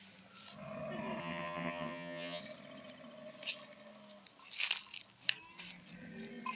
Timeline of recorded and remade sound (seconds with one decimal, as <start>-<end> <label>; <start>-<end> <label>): 0.0-1.2 recorded; 1.2-2.4 remade; 2.4-6.6 recorded